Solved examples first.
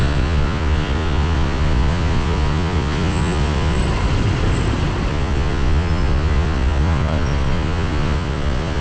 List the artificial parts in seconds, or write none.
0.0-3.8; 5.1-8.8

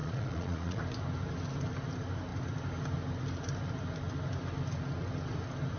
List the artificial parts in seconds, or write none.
0.0-0.8